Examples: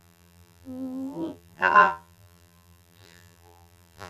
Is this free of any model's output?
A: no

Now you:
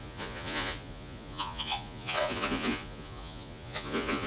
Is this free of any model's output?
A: no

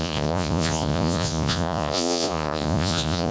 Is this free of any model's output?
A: no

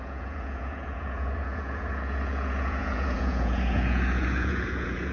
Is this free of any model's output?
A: no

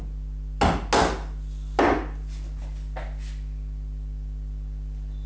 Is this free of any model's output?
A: yes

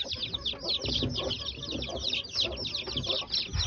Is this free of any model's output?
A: yes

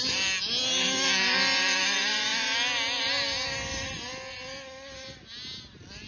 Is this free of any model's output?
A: yes